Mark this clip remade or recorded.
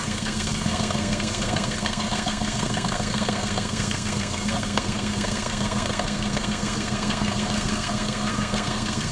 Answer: remade